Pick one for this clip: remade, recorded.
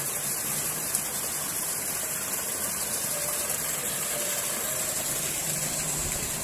remade